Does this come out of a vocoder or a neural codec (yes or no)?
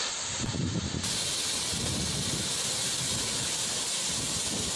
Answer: no